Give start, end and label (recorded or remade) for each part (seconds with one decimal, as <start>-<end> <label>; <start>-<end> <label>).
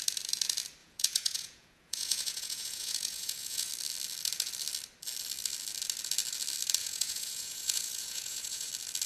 0.0-0.8 recorded; 0.8-3.7 remade; 3.7-6.8 recorded; 6.8-8.7 remade; 8.7-9.1 recorded